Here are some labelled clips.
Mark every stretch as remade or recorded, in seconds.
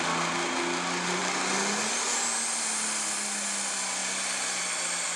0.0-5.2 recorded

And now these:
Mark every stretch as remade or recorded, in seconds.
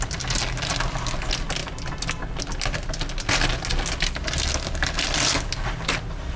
0.0-6.4 recorded